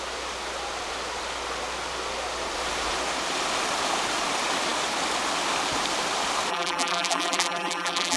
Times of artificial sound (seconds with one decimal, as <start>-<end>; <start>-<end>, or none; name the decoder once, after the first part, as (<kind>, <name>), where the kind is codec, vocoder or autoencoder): 6.5-8.2 (vocoder, BigVGAN v2)